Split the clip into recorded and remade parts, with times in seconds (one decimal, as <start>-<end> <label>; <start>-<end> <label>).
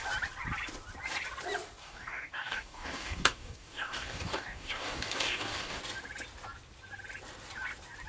0.0-1.8 recorded; 1.8-5.8 remade; 5.8-8.1 recorded